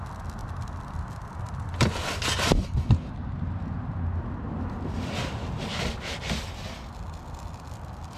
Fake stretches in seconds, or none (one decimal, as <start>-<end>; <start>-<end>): none